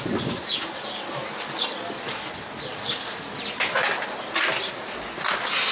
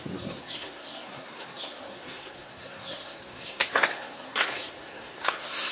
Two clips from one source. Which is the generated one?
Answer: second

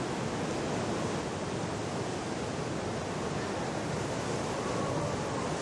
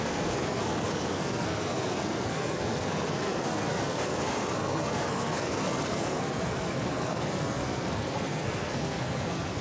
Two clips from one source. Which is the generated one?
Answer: second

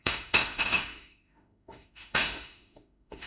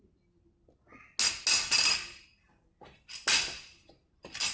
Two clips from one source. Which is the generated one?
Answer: first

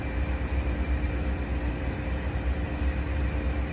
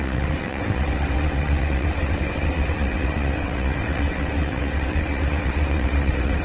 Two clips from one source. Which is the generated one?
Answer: second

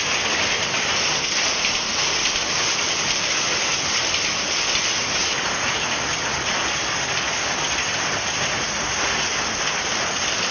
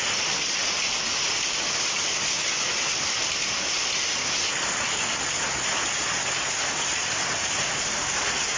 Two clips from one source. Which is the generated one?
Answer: first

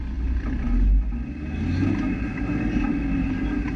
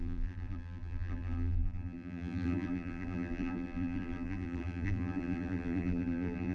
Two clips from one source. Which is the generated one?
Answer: second